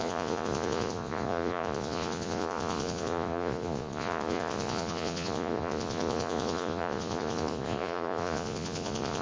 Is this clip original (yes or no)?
no